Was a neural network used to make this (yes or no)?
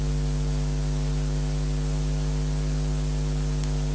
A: no